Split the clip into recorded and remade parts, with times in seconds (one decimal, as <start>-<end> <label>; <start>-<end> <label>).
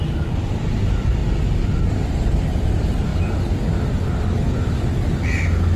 0.0-5.8 recorded